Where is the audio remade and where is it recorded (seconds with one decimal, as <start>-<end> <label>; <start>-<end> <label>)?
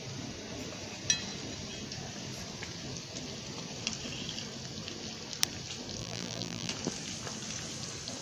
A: 0.0-6.0 recorded; 6.0-6.7 remade; 6.7-8.2 recorded